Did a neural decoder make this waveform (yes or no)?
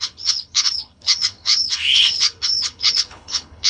yes